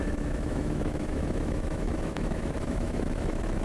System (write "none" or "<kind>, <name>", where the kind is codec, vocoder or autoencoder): autoencoder, DAC-VAE